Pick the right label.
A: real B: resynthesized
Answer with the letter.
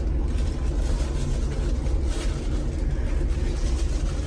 A